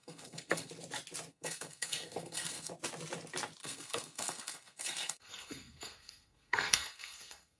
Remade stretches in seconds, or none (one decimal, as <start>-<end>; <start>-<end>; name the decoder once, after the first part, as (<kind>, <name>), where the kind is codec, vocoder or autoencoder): 0.0-0.7 (codec, SNAC); 1.3-2.7; 3.6-7.6